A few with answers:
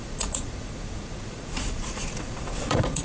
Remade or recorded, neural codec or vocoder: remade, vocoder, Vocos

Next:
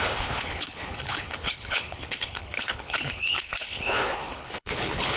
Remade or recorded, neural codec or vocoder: remade, codec, HILCodec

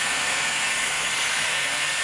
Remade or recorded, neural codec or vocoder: remade, codec, SNAC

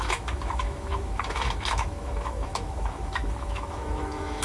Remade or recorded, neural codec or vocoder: remade, autoencoder, DAC-VAE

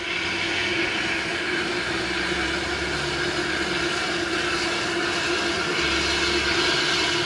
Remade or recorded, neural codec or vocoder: recorded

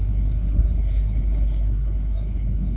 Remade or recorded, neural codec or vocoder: remade, codec, SNAC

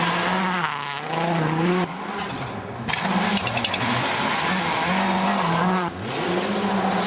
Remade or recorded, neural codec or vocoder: recorded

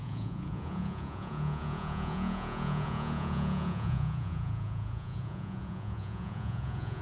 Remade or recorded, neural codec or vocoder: remade, vocoder, Vocos